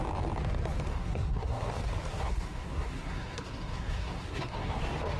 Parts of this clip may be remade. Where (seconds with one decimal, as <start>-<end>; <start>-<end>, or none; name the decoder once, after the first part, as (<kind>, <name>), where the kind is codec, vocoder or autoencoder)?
0.9-1.7 (codec, SNAC); 2.1-4.8